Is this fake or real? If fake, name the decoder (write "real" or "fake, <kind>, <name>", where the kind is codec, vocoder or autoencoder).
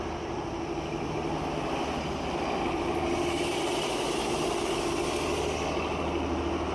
real